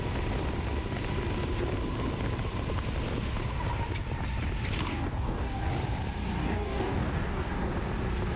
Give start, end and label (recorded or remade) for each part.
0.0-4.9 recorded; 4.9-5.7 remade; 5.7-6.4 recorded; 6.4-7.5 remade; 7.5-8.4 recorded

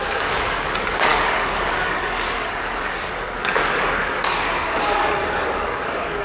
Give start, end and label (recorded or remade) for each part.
0.0-6.2 remade

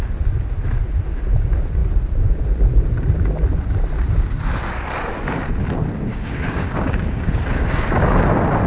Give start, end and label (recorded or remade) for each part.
0.0-6.1 recorded; 6.1-8.2 remade; 8.2-8.7 recorded

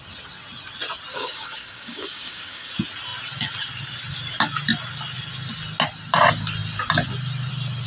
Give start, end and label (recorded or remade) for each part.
0.0-1.1 recorded; 1.1-2.7 remade; 2.7-7.9 recorded

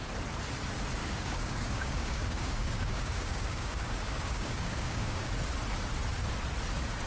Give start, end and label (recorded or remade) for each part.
0.0-1.0 recorded; 1.0-5.3 remade; 5.3-7.1 recorded

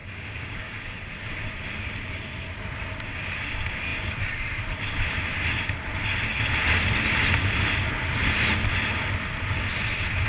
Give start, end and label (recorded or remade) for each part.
0.0-1.0 remade; 1.0-10.3 recorded

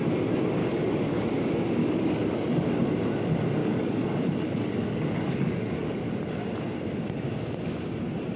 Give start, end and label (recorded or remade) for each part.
0.0-0.6 recorded; 0.6-1.3 remade; 1.3-1.8 recorded; 1.8-2.8 remade; 2.8-3.6 recorded; 3.6-6.1 remade; 6.1-8.4 recorded

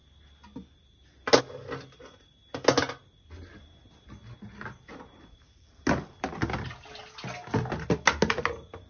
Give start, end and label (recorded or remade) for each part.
0.0-8.9 recorded